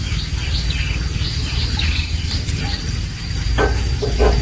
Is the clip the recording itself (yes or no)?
yes